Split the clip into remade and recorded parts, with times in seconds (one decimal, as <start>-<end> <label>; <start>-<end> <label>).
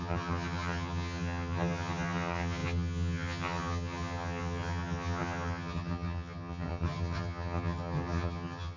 0.0-8.8 remade